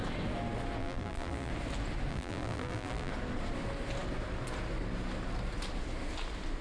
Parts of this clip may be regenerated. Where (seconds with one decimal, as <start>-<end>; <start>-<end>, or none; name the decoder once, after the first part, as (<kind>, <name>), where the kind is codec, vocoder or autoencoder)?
0.8-1.5 (vocoder, BigVGAN v2); 2.1-3.1